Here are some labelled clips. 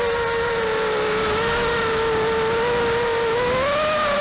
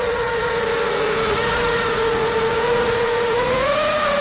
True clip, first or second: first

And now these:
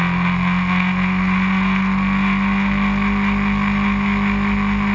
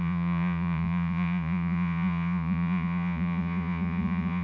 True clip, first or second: first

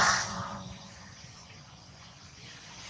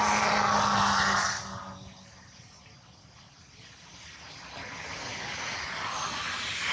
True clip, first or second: second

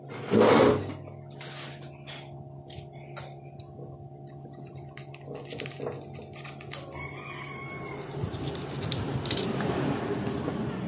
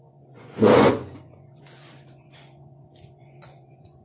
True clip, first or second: first